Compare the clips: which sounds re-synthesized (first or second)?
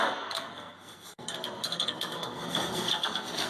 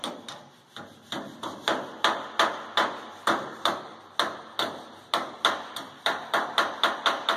first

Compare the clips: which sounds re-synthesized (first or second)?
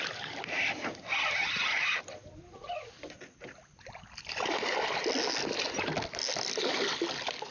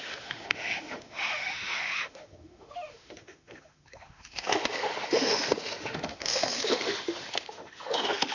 second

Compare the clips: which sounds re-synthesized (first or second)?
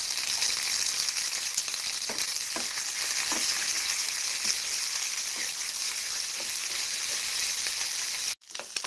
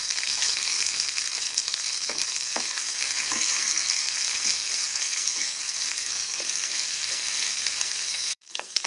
second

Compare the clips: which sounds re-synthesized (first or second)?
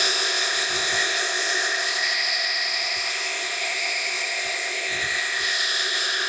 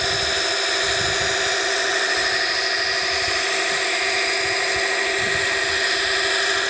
first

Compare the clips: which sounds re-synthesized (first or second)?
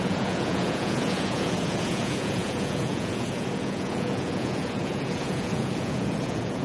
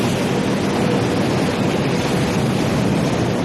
first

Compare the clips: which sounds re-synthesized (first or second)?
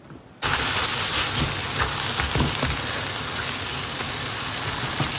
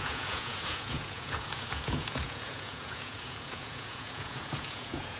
second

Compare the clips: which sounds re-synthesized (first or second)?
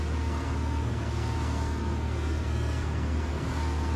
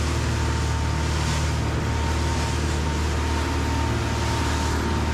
first